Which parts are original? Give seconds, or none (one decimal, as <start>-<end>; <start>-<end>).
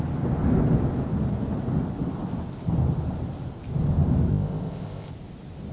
0.0-4.3; 5.1-5.7